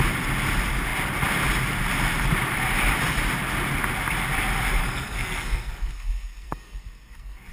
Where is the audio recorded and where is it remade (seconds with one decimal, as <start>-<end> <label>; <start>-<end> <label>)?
0.0-4.8 recorded; 4.8-7.5 remade